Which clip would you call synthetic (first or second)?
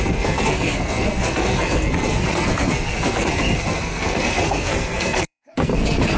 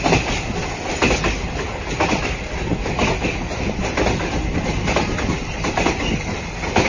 first